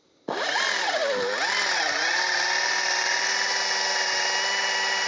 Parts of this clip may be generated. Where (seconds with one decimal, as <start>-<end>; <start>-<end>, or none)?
0.0-1.0; 4.1-5.1